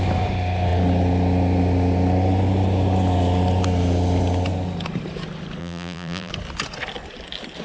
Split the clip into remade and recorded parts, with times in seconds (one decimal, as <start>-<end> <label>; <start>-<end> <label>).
0.0-5.6 recorded; 5.6-6.3 remade; 6.3-7.6 recorded